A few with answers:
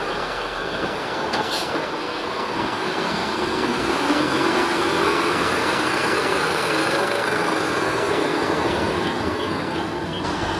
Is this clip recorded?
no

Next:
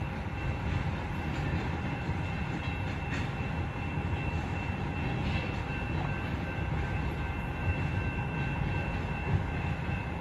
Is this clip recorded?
yes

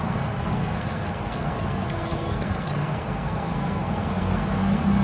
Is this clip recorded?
no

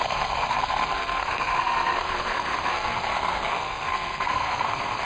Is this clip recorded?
no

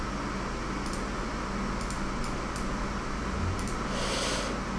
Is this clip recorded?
yes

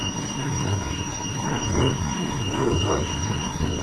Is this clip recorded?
no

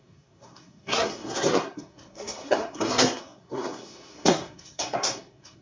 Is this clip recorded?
no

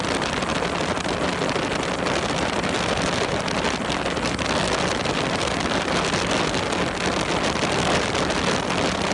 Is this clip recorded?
yes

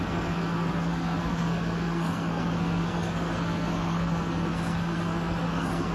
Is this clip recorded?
no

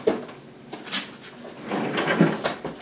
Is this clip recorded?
yes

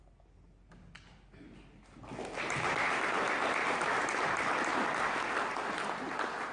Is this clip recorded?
yes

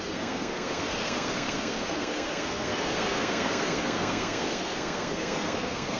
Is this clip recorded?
no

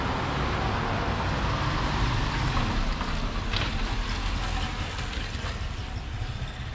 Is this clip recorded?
yes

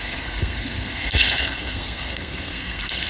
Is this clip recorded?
no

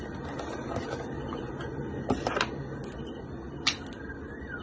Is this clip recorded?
yes